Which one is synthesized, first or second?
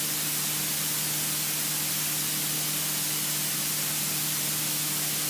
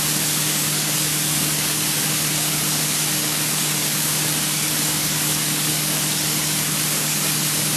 second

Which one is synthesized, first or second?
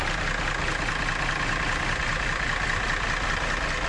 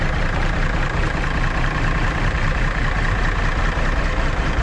second